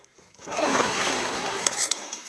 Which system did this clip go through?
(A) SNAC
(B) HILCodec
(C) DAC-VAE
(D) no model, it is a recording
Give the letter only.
A